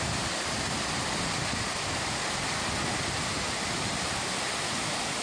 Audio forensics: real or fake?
real